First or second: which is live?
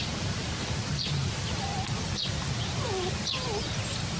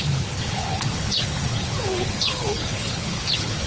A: first